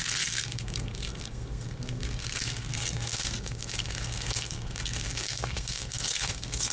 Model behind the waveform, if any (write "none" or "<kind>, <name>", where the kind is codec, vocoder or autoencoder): codec, SNAC